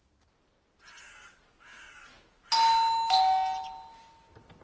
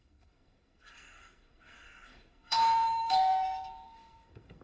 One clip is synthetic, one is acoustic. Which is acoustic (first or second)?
first